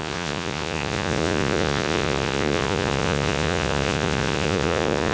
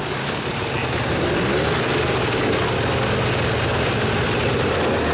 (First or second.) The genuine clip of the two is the second